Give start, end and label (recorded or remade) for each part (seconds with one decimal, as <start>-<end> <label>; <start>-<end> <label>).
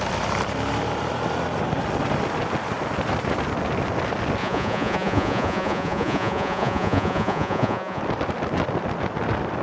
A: 0.0-4.4 recorded; 4.4-8.0 remade; 8.0-9.6 recorded